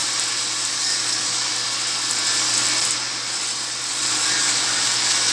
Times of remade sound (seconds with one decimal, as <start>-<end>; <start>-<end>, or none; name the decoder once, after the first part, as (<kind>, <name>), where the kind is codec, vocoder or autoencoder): 0.7-1.5 (codec, DAC); 3.9-5.3